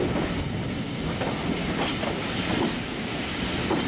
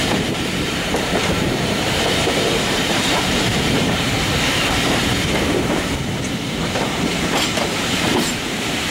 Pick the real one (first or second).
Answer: first